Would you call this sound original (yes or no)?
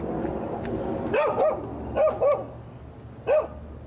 yes